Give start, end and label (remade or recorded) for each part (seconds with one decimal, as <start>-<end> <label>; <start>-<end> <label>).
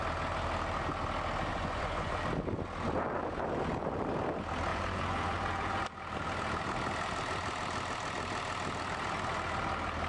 0.0-1.5 recorded; 1.5-2.2 remade; 2.2-4.7 recorded; 4.7-5.8 remade; 5.8-10.1 recorded